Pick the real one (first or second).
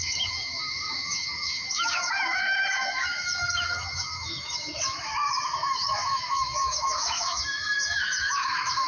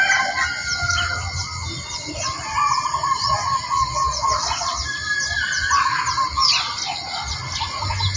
second